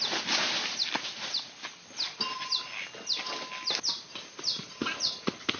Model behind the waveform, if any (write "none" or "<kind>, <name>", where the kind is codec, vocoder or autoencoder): none